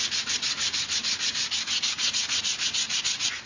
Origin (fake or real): real